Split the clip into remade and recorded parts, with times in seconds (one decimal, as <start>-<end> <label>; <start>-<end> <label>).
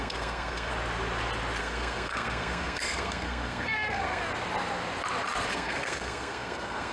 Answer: 0.0-0.7 remade; 0.7-1.6 recorded; 1.6-4.2 remade; 4.2-5.5 recorded; 5.5-6.9 remade